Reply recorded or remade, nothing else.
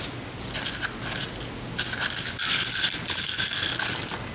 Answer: recorded